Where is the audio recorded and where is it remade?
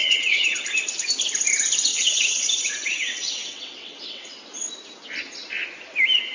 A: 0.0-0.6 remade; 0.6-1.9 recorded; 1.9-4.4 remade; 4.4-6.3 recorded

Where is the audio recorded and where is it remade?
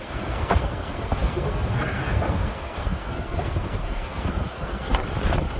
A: 0.0-5.0 remade; 5.0-5.6 recorded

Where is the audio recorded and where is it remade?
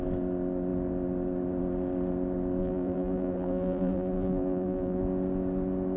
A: 0.0-2.6 recorded; 2.6-5.0 remade; 5.0-6.0 recorded